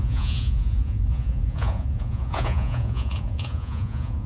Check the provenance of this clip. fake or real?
fake